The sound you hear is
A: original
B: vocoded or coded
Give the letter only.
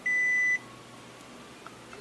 A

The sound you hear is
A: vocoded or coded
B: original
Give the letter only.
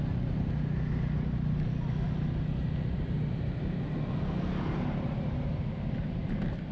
B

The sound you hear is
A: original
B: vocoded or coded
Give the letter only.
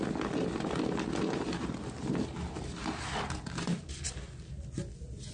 A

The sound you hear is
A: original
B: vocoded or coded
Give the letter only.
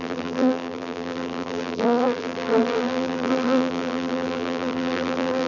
B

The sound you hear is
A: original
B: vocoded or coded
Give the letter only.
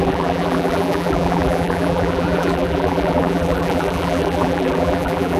B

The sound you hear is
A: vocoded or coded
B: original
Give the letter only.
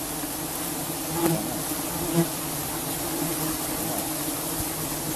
B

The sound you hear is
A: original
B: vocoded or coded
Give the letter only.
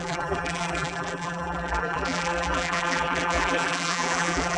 B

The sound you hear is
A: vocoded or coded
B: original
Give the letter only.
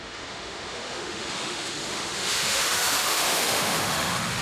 A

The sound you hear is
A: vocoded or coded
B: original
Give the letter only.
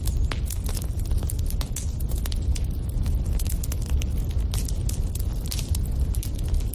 B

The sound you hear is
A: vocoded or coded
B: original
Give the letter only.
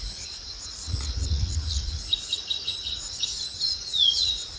A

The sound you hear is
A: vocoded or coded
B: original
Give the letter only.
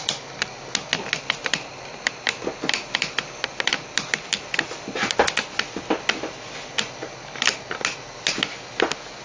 B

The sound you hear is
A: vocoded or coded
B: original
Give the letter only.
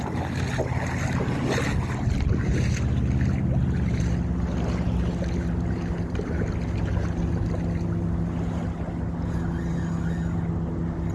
B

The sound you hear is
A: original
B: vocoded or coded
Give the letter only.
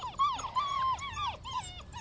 A